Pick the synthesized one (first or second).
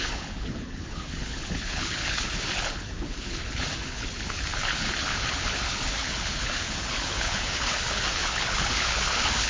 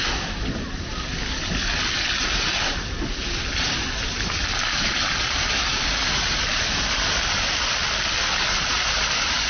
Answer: first